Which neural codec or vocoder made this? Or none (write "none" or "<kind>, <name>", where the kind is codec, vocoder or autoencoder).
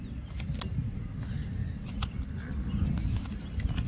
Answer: none